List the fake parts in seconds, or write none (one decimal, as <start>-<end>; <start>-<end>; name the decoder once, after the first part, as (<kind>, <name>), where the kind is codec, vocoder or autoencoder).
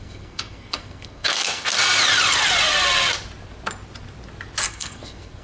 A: 0.0-1.7 (codec, SNAC); 4.7-5.4